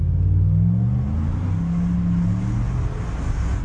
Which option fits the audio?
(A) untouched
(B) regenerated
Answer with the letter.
A